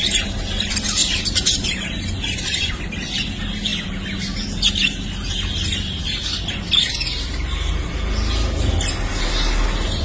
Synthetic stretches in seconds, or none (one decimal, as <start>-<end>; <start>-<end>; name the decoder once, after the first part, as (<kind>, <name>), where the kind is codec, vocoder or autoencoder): 1.0-2.7 (vocoder, BigVGAN v2)